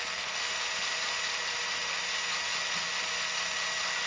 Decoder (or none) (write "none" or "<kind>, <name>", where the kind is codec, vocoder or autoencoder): none